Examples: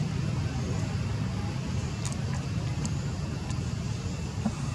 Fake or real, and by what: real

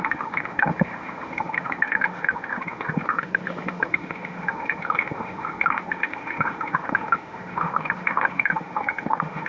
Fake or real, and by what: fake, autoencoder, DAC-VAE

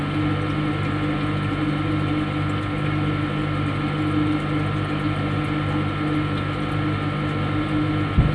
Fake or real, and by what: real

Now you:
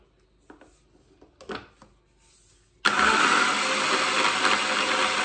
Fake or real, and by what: real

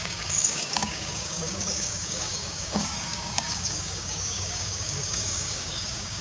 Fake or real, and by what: fake, codec, DAC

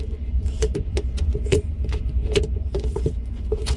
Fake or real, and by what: fake, vocoder, Vocos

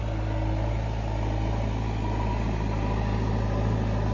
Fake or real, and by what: real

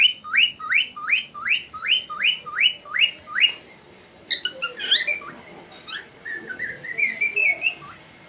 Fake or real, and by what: real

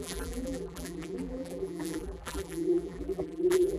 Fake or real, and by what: fake, vocoder, BigVGAN v2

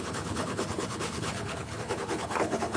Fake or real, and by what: fake, codec, HILCodec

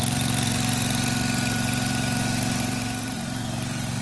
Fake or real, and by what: fake, vocoder, BigVGAN v2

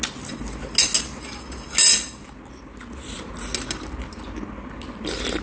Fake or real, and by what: real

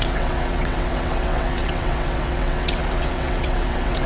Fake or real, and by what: fake, vocoder, WaveNeXt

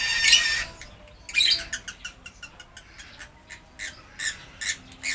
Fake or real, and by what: real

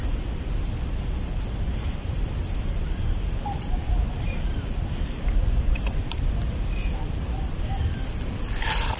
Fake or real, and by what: fake, vocoder, BigVGAN v2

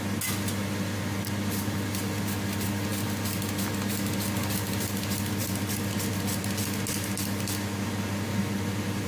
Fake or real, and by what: real